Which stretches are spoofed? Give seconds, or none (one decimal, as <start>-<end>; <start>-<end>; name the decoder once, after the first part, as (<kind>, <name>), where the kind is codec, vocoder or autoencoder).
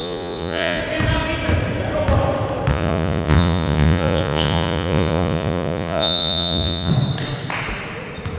0.0-0.8 (vocoder, Vocos); 2.7-6.9